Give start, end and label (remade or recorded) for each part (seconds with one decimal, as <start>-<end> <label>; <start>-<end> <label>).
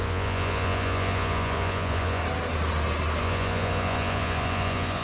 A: 0.0-2.2 remade; 2.2-3.2 recorded; 3.2-5.0 remade